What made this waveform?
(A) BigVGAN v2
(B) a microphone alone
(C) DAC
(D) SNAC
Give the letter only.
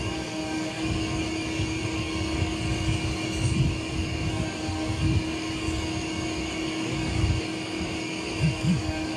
C